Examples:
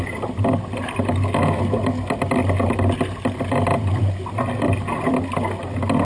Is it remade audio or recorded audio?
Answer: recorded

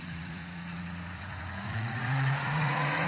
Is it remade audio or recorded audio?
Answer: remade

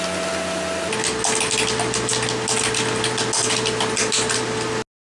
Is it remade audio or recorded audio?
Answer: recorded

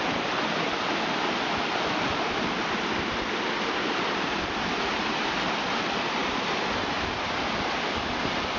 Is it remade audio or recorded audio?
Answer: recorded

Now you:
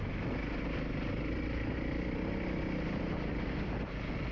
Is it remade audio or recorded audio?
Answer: recorded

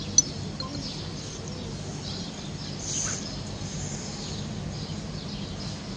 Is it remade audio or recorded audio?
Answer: recorded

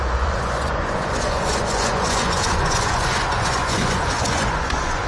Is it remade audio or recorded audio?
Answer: remade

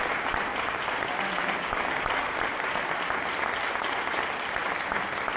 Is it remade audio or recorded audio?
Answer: recorded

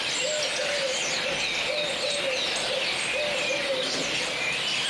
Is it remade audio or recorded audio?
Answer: recorded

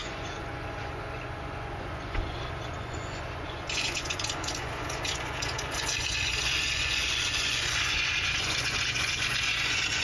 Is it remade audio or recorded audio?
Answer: remade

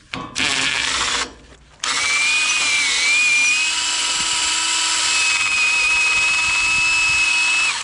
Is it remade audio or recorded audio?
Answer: recorded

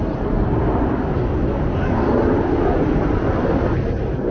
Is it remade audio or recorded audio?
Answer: recorded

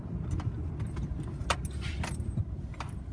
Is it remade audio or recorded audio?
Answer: recorded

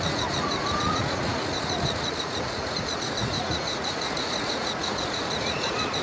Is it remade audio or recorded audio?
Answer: remade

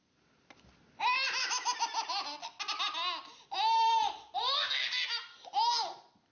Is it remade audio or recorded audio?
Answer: recorded